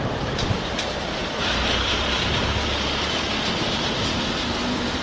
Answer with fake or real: fake